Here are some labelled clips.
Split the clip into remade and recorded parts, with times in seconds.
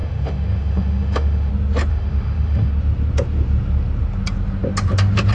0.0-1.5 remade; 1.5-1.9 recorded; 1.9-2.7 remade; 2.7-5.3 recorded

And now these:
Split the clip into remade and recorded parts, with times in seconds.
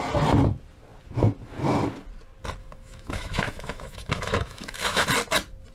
0.0-2.6 recorded; 2.6-5.1 remade; 5.1-5.7 recorded